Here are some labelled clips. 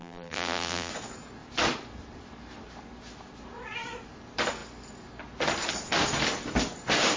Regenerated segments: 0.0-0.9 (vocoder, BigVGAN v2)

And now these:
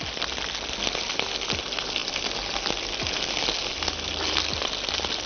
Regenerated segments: none

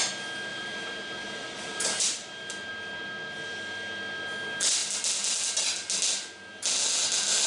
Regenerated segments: 0.5-2.7 (vocoder, BigVGAN v2)

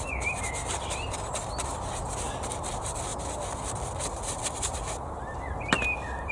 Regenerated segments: 0.0-3.1 (vocoder, BigVGAN v2); 4.4-6.3